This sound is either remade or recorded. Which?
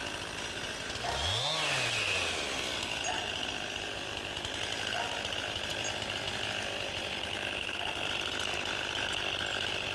recorded